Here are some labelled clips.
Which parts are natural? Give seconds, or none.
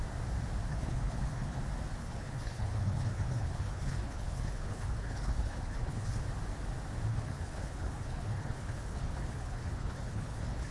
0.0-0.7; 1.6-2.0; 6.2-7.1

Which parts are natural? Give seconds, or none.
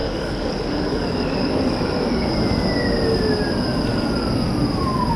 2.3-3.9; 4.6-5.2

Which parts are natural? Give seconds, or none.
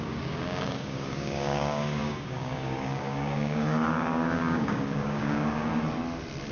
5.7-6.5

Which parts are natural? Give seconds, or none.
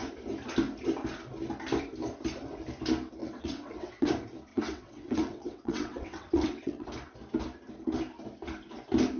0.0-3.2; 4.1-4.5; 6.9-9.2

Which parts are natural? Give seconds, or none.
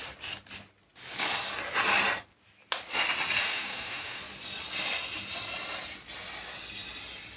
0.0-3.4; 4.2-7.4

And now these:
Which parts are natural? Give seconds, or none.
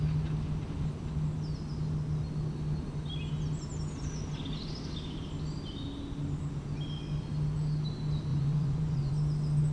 0.0-8.3; 9.1-9.7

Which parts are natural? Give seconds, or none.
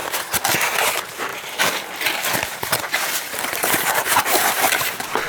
0.0-1.3; 4.5-5.3